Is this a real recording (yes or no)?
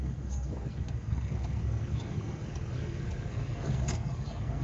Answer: no